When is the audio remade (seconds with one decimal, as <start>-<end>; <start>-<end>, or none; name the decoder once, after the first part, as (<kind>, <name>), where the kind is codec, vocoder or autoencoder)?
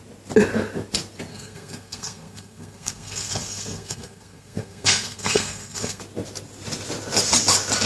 1.3-6.0 (codec, SNAC)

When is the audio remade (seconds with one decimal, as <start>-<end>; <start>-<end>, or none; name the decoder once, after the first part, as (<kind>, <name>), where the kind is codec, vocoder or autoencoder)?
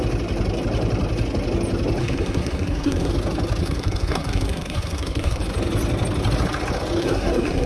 2.0-3.1 (codec, SNAC); 3.6-5.4; 7.0-7.7